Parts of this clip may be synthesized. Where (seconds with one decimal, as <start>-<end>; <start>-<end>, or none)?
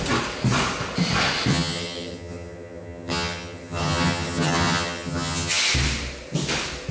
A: 1.5-5.6